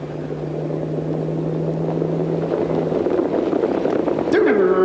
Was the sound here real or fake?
real